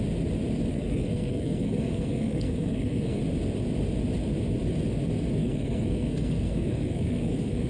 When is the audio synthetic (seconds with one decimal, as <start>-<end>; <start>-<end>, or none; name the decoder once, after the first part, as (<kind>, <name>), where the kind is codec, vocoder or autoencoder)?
0.7-3.2 (codec, SNAC); 5.4-7.7